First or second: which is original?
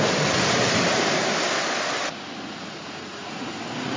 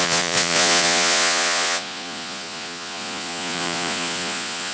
first